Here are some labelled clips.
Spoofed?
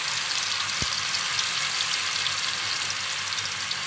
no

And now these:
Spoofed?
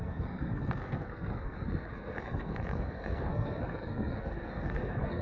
yes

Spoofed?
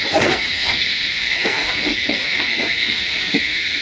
yes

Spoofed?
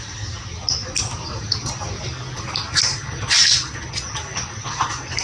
no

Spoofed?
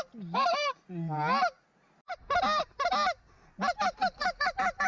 no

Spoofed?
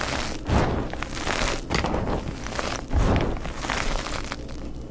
no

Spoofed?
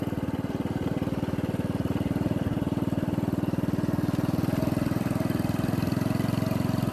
no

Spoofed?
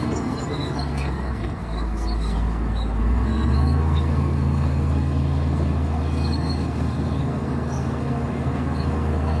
yes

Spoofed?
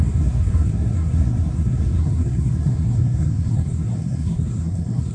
yes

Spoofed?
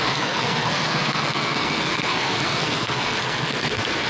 yes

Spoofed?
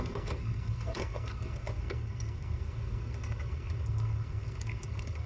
yes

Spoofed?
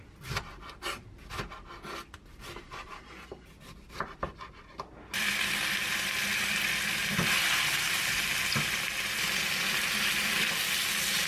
no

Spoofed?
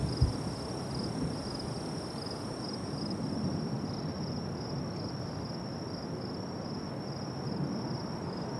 no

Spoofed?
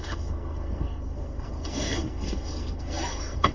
yes